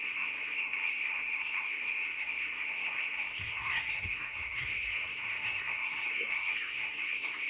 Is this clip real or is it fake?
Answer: fake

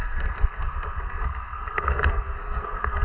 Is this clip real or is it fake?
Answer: fake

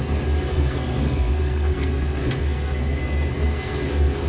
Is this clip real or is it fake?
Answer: fake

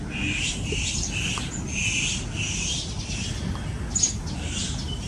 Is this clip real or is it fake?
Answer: real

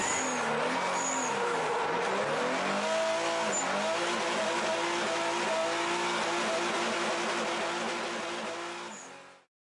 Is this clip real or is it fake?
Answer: real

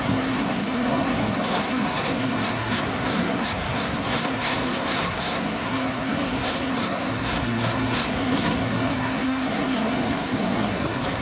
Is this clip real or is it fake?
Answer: fake